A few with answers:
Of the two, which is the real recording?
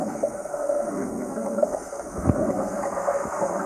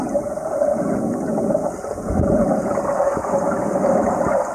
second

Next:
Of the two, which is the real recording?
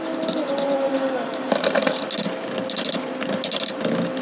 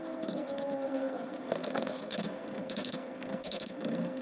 first